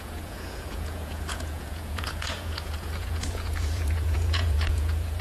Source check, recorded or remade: remade